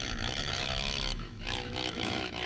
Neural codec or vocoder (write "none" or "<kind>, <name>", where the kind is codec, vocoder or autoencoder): autoencoder, DAC-VAE